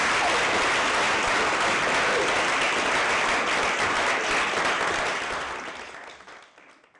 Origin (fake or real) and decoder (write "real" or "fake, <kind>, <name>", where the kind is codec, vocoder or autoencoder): real